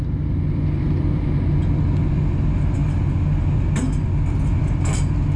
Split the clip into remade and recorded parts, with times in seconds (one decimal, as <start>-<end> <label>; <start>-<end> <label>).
0.0-5.4 recorded